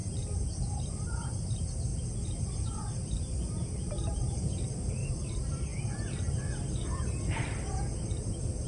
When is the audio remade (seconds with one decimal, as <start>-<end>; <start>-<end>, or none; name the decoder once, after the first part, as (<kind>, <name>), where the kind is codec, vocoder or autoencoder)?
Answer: 0.0-8.7 (vocoder, BigVGAN v2)

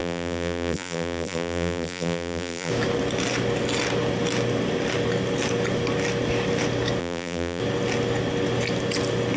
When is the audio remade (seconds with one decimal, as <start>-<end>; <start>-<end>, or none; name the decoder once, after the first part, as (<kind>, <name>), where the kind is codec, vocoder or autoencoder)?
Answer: 0.0-2.7 (vocoder, BigVGAN v2); 7.0-7.6

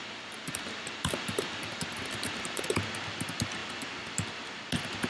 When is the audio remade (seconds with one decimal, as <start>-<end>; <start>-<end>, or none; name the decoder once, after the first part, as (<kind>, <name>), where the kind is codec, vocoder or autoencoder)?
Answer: 0.0-2.6 (vocoder, BigVGAN v2)

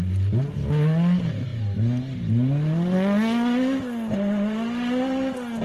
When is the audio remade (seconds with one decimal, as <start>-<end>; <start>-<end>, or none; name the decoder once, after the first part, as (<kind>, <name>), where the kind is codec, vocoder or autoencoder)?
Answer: none

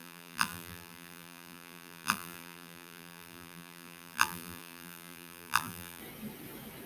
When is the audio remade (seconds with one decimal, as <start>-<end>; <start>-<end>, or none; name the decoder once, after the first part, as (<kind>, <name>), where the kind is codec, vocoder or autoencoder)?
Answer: 0.0-6.0 (vocoder, BigVGAN v2)

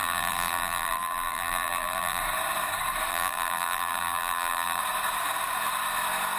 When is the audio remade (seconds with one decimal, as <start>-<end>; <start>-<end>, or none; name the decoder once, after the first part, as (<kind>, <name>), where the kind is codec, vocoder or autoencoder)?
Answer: 0.0-2.2 (vocoder, BigVGAN v2); 3.1-4.8